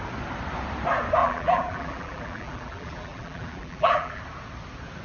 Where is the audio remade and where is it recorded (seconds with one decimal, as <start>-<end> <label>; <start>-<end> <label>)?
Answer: 0.0-1.2 recorded; 1.2-4.2 remade; 4.2-5.0 recorded